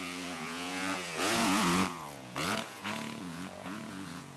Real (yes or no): no